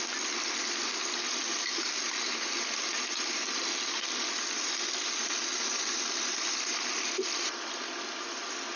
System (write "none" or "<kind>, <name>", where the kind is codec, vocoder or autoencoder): none